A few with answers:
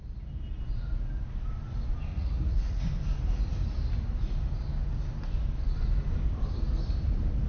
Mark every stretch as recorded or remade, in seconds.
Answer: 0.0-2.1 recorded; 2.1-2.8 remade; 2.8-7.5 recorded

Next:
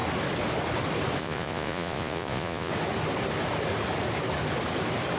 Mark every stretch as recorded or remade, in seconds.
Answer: 0.0-1.2 recorded; 1.2-2.7 remade; 2.7-5.2 recorded

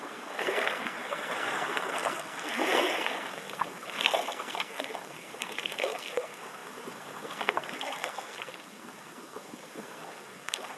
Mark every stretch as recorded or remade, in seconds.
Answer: 0.0-10.8 remade

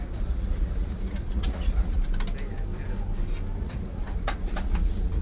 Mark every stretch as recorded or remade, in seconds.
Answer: 0.0-2.0 remade; 2.0-3.6 recorded; 3.6-5.2 remade